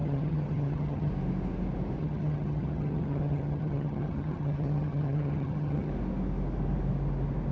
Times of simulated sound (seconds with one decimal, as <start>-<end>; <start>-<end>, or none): 0.0-1.1; 2.0-5.9